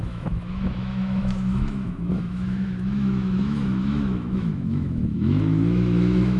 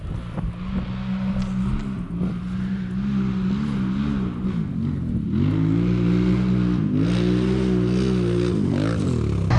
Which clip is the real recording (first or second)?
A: second